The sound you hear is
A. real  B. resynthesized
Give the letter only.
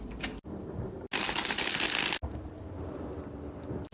A